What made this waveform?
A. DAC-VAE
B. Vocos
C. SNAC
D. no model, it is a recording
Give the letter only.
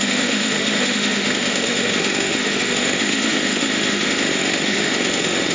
A